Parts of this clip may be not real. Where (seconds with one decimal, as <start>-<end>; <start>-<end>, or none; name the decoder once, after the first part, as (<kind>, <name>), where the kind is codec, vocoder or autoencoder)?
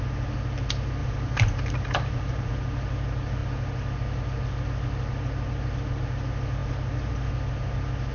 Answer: 1.0-2.5 (vocoder, BigVGAN v2)